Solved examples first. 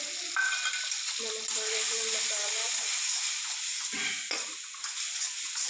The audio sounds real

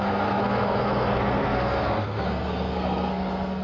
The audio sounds fake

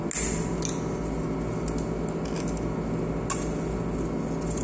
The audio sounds real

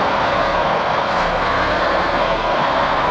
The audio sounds fake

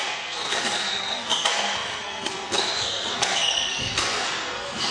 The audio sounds fake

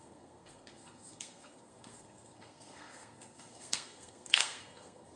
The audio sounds fake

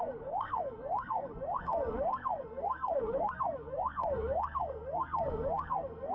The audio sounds fake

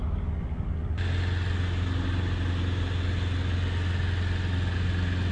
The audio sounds real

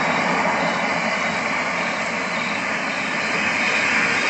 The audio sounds real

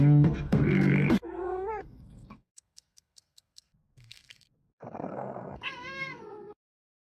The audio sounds fake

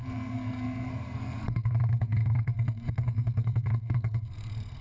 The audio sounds fake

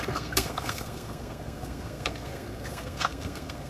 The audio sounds fake